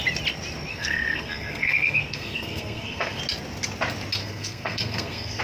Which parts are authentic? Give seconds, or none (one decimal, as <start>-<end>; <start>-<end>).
0.0-0.7; 3.2-4.2